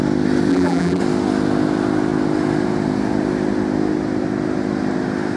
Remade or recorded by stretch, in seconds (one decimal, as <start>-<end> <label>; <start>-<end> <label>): 0.0-0.5 recorded; 0.5-1.0 remade; 1.0-5.4 recorded